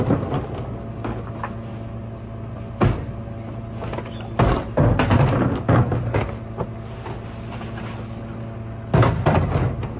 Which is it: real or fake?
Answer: real